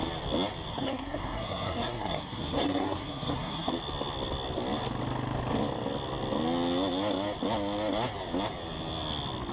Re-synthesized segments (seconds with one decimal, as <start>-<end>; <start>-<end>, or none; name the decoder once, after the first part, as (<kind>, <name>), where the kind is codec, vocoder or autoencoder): 0.7-3.7 (codec, SNAC)